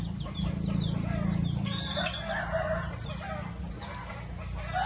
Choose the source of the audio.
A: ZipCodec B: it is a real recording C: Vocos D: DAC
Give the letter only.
B